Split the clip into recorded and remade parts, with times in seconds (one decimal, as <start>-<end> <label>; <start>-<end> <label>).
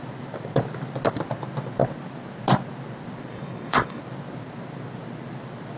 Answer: 0.0-3.3 recorded; 3.3-4.0 remade; 4.0-5.8 recorded